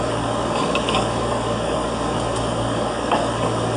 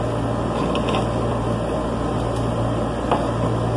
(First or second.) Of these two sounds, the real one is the second